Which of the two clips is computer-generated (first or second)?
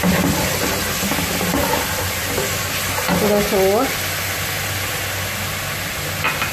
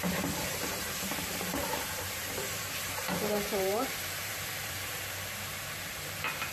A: second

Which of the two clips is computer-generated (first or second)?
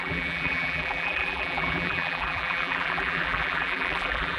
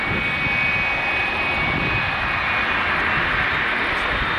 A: first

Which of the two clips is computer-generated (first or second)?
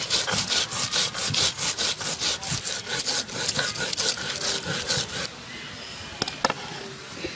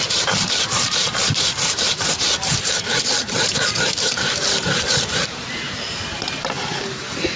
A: second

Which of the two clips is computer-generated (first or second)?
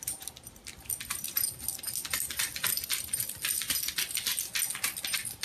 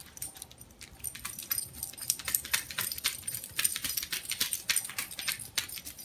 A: second